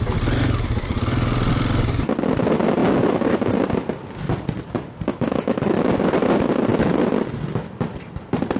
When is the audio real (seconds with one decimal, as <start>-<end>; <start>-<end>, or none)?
0.0-5.1; 5.9-8.6